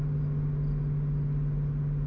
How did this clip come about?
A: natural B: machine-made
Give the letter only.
A